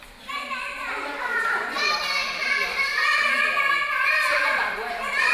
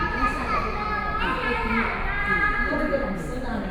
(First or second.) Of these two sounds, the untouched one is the second